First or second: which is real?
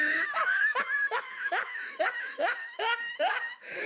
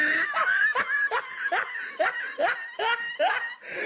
second